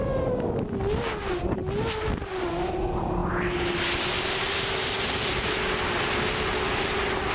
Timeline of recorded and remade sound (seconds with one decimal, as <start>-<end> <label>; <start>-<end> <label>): 0.0-7.3 recorded